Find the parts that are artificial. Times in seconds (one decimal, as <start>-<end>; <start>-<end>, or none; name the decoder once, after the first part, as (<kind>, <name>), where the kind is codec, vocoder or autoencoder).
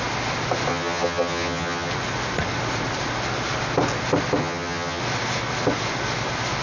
0.7-1.9 (vocoder, HiFi-GAN); 4.4-5.0